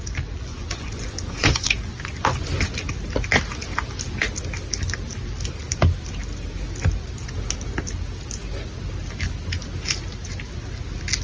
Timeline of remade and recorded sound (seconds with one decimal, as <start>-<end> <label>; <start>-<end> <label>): 0.0-0.5 recorded; 0.5-1.9 remade; 1.9-11.2 recorded